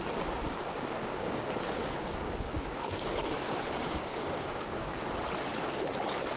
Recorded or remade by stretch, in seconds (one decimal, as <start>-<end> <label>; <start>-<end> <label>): 0.0-1.1 recorded; 1.1-4.9 remade; 4.9-6.4 recorded